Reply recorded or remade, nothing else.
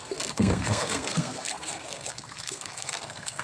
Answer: remade